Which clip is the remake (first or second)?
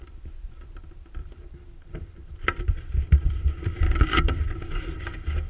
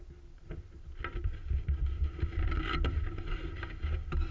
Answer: first